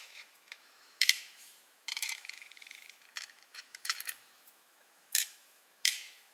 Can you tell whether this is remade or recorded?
remade